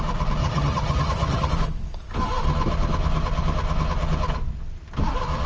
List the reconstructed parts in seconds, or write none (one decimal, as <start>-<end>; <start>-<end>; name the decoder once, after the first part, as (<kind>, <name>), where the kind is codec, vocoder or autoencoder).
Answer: 0.4-1.5 (vocoder, HiFi-GAN)